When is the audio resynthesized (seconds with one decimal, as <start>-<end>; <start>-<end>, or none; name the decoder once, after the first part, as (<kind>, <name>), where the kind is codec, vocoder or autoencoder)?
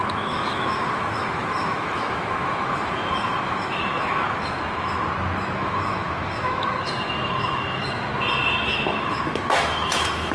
0.0-5.0 (autoencoder, DAC-VAE); 5.6-8.1; 8.6-10.3